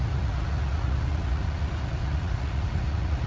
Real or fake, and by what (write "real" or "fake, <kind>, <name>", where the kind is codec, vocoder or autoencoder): fake, vocoder, Vocos